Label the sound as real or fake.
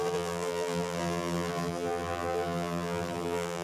fake